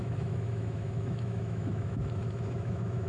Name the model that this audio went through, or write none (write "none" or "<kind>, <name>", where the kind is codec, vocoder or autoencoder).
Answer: autoencoder, DAC-VAE